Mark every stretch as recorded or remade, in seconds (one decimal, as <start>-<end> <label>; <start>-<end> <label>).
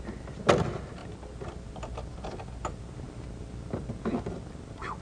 0.0-5.0 recorded